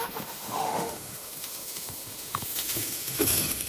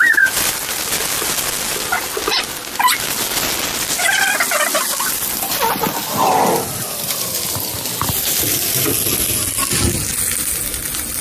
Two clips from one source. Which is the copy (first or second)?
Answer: first